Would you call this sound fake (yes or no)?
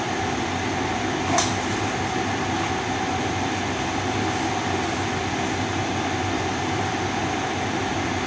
no